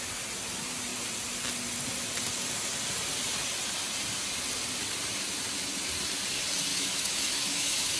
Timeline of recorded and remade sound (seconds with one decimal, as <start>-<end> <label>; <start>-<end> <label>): 0.0-6.7 recorded; 6.7-8.0 remade